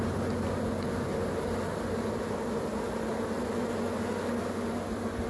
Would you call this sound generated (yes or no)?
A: no